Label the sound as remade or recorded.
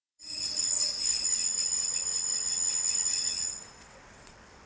remade